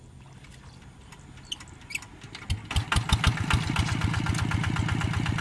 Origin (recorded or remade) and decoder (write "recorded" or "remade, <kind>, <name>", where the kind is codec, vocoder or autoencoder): recorded